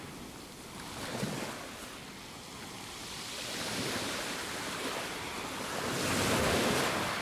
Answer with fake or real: real